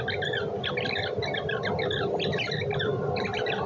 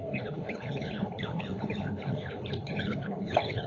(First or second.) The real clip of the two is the first